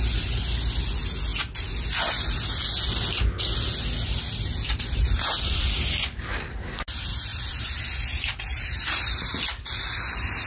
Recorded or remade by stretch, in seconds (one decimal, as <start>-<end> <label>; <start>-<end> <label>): 0.0-7.3 recorded; 7.3-9.6 remade; 9.6-10.5 recorded